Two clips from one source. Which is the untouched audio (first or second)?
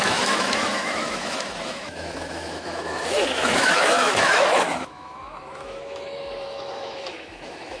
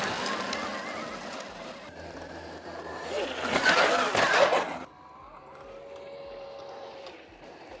second